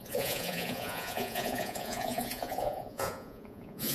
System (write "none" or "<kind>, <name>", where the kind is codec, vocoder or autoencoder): vocoder, Vocos